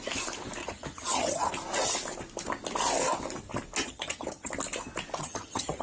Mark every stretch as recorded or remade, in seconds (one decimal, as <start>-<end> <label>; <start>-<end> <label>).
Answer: 0.0-0.6 recorded; 0.6-1.5 remade; 1.5-3.8 recorded; 3.8-4.5 remade; 4.5-5.2 recorded; 5.2-5.8 remade